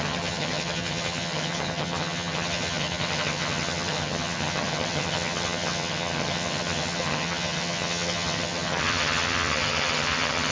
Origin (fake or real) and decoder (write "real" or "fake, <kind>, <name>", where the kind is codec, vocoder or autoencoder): fake, vocoder, HiFi-GAN